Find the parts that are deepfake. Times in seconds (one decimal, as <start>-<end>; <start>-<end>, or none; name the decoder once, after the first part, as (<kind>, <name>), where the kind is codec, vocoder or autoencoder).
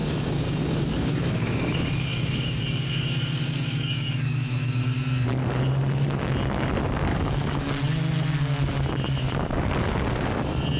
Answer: 0.0-5.0 (codec, DAC); 7.1-7.7